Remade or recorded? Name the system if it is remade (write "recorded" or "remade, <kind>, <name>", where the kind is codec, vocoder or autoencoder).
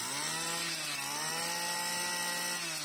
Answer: recorded